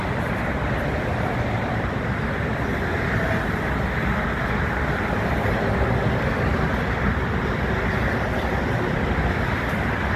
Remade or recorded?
recorded